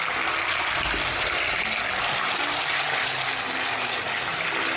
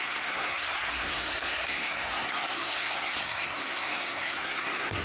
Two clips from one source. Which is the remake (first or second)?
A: second